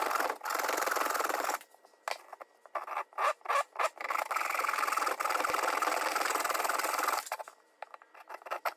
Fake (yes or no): no